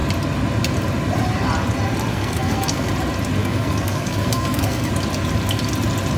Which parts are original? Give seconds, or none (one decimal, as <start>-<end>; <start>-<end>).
0.0-2.1; 2.9-3.4; 4.9-6.2